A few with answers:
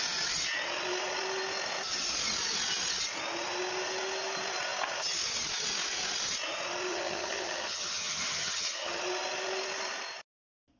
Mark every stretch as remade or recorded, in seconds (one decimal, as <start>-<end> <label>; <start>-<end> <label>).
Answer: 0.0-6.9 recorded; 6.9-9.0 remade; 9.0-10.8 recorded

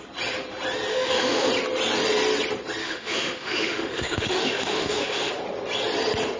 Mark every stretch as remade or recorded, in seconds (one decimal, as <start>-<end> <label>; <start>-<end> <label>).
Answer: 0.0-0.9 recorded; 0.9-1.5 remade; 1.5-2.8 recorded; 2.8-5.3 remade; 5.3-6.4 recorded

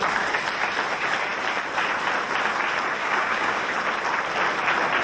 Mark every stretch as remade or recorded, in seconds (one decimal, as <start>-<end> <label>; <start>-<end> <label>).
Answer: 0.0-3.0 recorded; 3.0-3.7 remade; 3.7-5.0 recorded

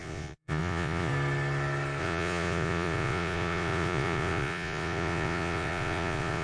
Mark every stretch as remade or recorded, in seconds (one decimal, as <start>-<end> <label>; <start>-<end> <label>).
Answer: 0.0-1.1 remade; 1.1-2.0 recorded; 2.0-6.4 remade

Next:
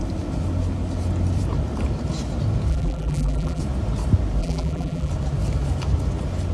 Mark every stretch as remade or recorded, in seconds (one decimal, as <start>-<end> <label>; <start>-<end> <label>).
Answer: 0.0-2.7 recorded; 2.7-3.6 remade; 3.6-4.4 recorded; 4.4-5.1 remade; 5.1-6.5 recorded